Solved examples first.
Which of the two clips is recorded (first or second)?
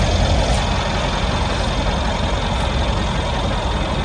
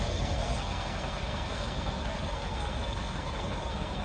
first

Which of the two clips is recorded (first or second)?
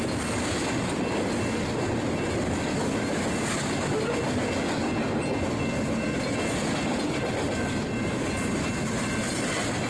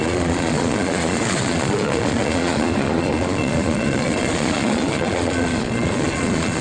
first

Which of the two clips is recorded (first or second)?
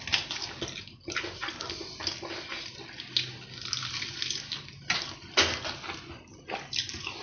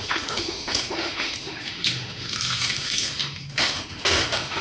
first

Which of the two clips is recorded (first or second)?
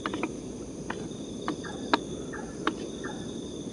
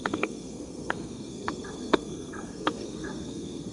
first